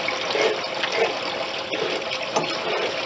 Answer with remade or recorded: recorded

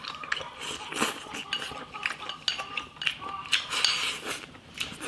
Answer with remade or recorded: recorded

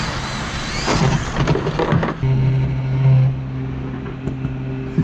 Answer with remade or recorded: recorded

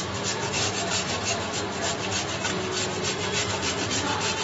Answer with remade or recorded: recorded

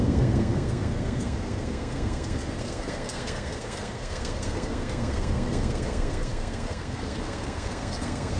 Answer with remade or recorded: remade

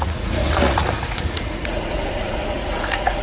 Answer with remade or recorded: remade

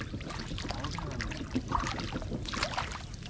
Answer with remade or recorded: recorded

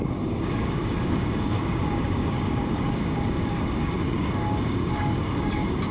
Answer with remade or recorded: remade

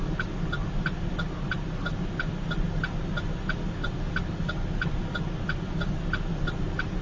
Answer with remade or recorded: recorded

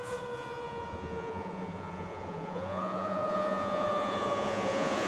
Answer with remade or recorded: remade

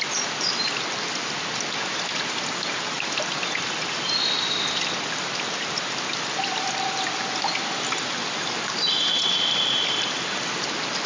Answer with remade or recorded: remade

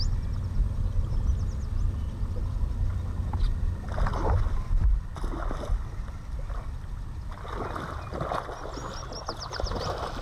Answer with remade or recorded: recorded